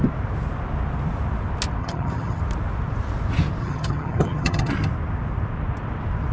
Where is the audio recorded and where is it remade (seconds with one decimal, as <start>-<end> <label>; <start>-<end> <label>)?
0.0-1.8 recorded; 1.8-2.4 remade; 2.4-3.6 recorded; 3.6-4.7 remade; 4.7-6.3 recorded